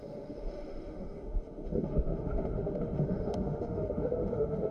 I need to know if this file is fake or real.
fake